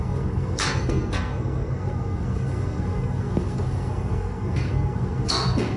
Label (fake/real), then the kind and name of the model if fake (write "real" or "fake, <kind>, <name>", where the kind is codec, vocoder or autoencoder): fake, codec, SNAC